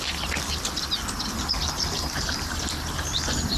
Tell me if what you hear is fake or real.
real